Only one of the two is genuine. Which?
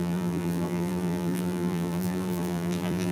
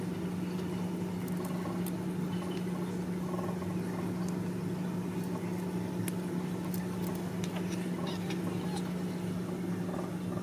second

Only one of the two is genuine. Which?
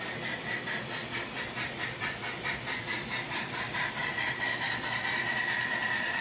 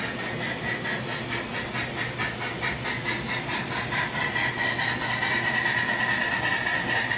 second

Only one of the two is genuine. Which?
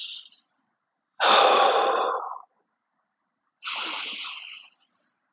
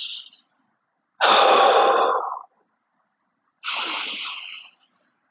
second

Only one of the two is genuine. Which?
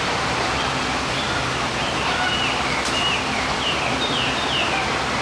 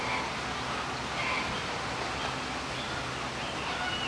second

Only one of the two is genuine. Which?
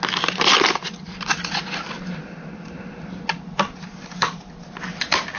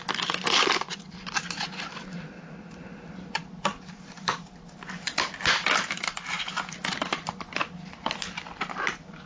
first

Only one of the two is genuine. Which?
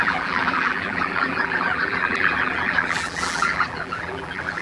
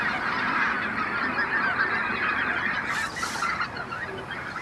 second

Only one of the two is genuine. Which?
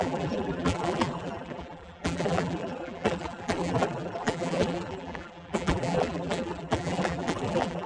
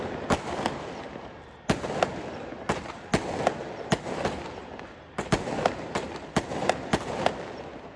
second